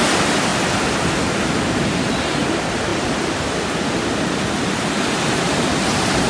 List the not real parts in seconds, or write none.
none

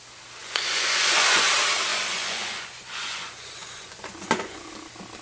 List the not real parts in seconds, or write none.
0.4-1.5; 1.9-4.7